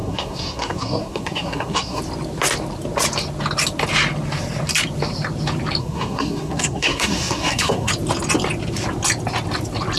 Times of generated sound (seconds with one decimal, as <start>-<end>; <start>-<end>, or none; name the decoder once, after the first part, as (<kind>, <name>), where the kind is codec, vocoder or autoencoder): 0.0-2.0 (codec, SNAC); 5.8-7.9